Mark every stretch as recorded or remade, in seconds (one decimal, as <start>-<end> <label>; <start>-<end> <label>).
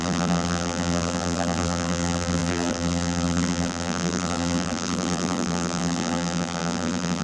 0.0-7.2 remade